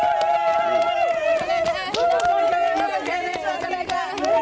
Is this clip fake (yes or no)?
no